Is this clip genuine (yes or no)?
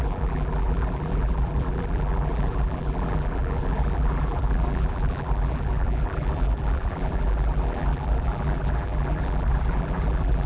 no